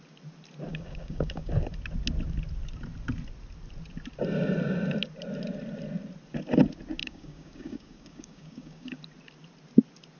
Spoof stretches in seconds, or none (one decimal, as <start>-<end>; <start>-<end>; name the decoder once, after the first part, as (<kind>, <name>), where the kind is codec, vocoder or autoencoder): 0.7-1.5 (codec, DAC); 7.0-9.0